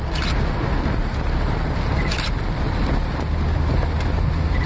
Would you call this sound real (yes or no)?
yes